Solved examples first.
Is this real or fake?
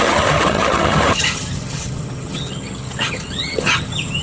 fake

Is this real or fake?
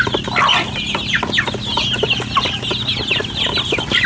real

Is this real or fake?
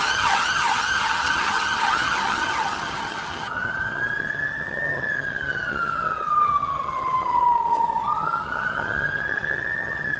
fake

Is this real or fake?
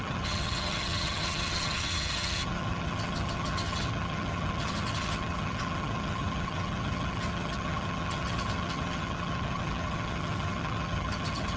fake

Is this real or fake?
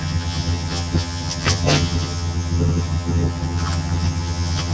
fake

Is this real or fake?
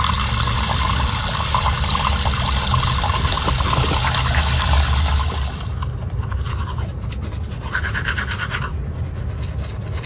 real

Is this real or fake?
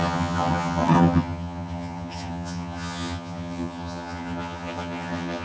fake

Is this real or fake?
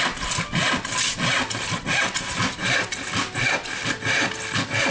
real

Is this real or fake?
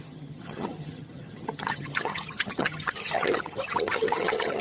fake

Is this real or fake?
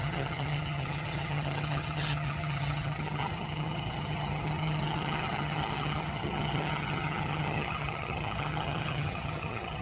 fake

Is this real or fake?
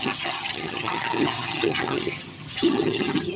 fake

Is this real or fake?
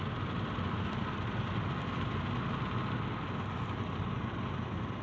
real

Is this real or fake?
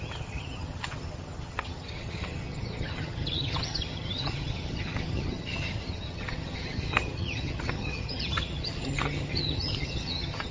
fake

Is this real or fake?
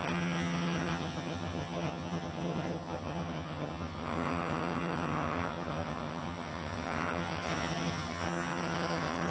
fake